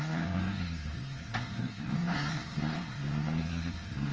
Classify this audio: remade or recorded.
remade